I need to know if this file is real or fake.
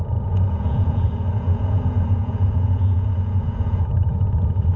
fake